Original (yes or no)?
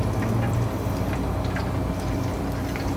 yes